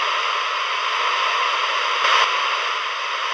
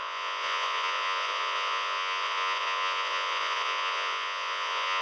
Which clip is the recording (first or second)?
first